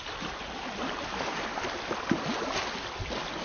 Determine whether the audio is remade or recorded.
recorded